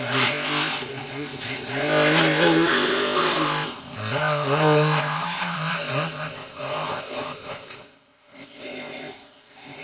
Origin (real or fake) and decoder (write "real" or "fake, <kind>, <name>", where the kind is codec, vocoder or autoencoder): fake, codec, ZipCodec